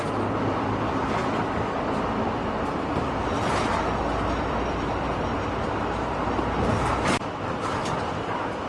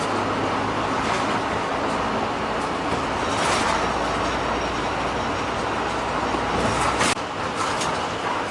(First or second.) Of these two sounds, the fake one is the first